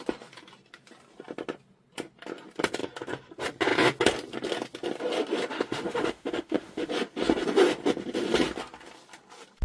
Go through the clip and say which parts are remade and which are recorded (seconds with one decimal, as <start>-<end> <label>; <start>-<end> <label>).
0.0-5.5 recorded; 5.5-6.9 remade; 6.9-9.6 recorded